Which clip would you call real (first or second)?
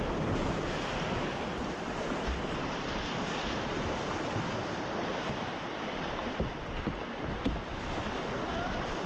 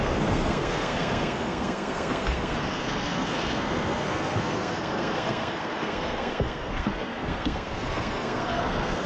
first